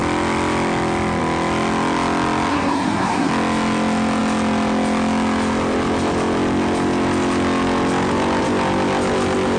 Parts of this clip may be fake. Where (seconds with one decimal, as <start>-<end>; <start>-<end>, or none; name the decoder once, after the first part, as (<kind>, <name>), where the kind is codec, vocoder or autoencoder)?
2.5-3.3 (codec, SNAC)